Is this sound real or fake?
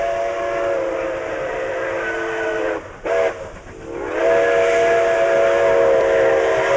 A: real